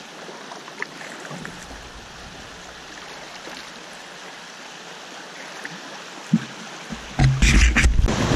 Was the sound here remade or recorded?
recorded